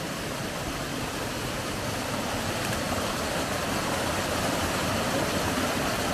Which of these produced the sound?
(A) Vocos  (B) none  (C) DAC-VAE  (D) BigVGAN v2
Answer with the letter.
D